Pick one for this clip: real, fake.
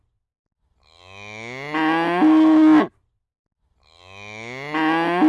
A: real